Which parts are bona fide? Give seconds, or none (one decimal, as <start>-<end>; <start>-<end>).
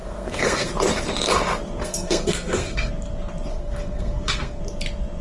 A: 0.7-1.8; 2.9-3.5; 4.6-5.2